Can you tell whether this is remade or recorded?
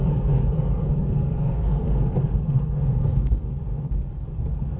remade